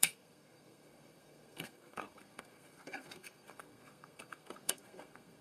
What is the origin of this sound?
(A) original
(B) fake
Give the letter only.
B